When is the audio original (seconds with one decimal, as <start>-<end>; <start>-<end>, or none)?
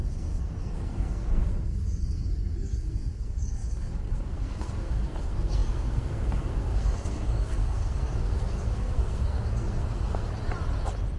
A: 10.3-11.2